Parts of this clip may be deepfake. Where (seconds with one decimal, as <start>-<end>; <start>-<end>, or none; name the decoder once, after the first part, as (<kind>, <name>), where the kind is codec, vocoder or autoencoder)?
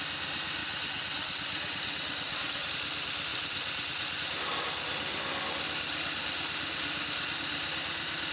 0.6-2.7 (vocoder, WaveNeXt); 3.3-4.2